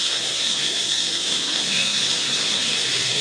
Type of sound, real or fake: fake